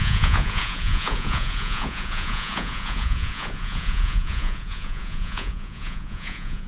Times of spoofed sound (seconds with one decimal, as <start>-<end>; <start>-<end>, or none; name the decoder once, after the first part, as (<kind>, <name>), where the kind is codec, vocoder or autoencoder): 0.0-6.7 (vocoder, Vocos)

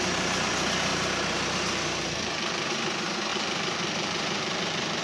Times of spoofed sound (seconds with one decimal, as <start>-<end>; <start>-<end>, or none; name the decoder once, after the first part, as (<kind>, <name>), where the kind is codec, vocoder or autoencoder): 0.9-2.7 (vocoder, BigVGAN v2); 3.3-5.0

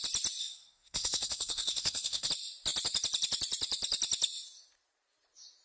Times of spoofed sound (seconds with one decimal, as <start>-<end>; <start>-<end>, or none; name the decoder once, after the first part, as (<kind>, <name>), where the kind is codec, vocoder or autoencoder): 0.4-2.3 (codec, SNAC)

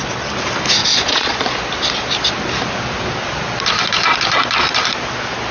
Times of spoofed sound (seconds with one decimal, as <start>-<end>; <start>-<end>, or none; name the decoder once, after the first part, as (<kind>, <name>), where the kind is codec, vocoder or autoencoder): 0.8-1.4 (vocoder, Vocos)

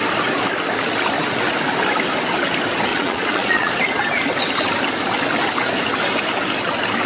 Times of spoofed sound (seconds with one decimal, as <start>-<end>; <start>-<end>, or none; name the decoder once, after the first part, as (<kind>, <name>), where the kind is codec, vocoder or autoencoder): 2.9-3.7 (vocoder, Vocos)

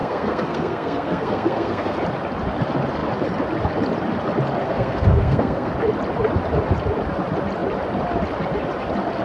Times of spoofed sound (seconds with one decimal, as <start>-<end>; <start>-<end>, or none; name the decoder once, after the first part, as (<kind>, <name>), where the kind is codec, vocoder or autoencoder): 0.0-2.0 (codec, SNAC); 4.6-5.7

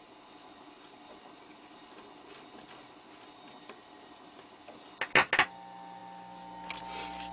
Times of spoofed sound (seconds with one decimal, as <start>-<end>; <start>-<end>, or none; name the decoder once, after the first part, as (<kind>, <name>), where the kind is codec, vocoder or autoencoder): none